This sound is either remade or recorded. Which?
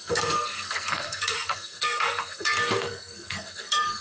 remade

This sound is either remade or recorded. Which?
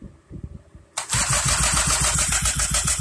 recorded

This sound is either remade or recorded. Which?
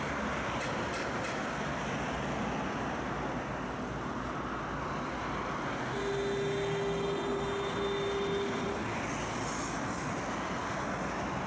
recorded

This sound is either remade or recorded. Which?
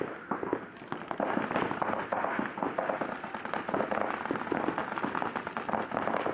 recorded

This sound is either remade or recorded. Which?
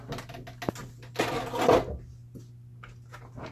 recorded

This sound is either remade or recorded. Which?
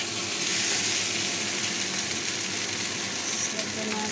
recorded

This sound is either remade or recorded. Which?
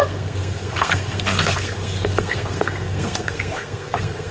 remade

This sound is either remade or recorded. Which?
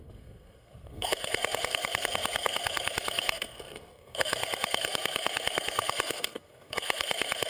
remade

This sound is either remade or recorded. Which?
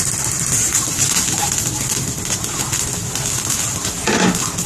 recorded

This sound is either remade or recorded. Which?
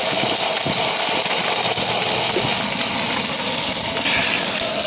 recorded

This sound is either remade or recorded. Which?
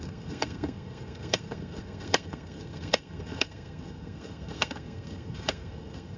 remade